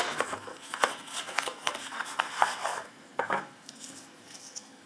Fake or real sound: fake